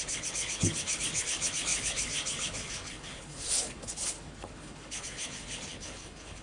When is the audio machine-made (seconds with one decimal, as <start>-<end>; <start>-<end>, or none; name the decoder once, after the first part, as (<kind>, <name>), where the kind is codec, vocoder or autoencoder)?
0.0-6.4 (codec, HILCodec)